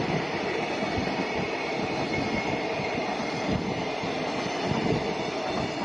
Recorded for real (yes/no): yes